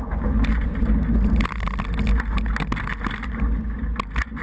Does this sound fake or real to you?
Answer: real